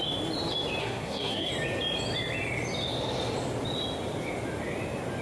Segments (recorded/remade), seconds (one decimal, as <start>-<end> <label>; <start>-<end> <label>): 0.0-0.8 recorded; 0.8-1.5 remade; 1.5-5.2 recorded